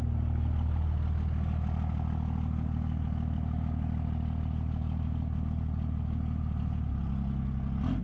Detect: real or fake real